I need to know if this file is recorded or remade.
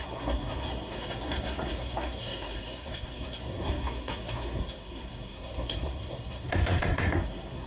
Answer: remade